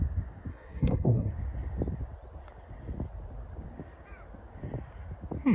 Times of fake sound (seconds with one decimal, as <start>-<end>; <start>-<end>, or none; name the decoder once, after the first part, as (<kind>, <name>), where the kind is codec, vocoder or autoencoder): 0.5-1.3 (codec, SNAC)